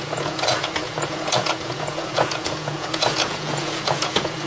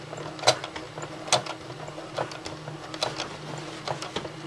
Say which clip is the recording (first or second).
second